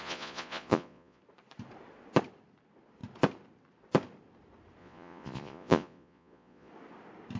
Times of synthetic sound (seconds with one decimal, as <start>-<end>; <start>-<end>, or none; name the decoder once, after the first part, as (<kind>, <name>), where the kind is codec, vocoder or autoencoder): 0.0-1.2 (vocoder, Vocos); 4.8-6.7

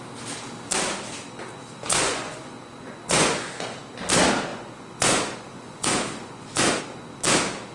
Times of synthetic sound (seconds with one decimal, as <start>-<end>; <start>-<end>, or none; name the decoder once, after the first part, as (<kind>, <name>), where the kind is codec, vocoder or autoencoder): 1.9-3.8 (vocoder, Vocos); 4.5-6.8

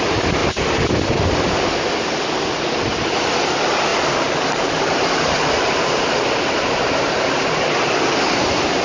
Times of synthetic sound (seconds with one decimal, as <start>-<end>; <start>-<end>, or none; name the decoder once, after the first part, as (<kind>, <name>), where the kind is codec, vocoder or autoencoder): none

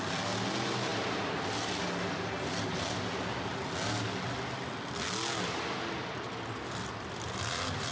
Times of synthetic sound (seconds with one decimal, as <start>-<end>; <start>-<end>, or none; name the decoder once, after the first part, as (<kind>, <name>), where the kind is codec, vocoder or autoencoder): none

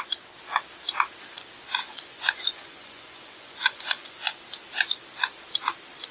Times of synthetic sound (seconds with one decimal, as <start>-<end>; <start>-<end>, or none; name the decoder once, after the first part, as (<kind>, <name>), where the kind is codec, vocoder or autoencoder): 1.8-4.4 (vocoder, Vocos)

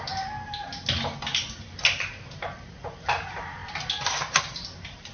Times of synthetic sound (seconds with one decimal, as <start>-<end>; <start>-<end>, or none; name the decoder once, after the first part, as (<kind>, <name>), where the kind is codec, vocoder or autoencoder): none

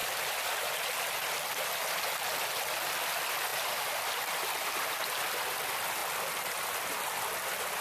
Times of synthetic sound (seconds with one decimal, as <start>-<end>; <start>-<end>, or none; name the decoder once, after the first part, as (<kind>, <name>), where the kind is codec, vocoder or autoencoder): none

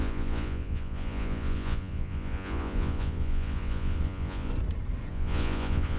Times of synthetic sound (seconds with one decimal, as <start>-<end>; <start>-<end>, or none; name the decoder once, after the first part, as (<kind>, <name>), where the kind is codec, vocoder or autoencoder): 0.0-4.5 (vocoder, Vocos); 5.1-6.0